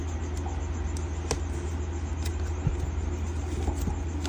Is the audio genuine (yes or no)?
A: yes